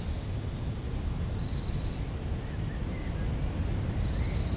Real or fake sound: real